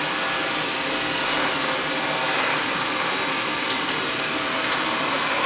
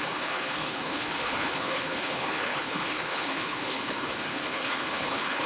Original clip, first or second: first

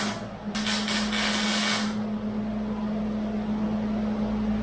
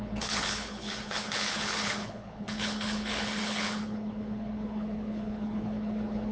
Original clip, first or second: first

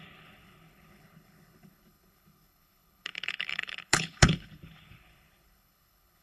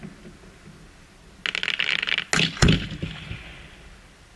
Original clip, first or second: second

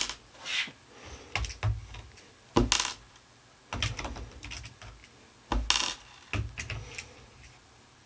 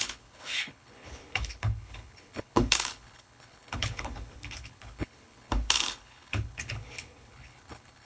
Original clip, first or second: first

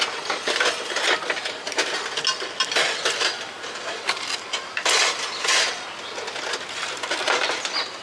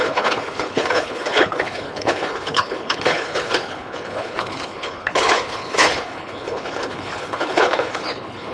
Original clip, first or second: first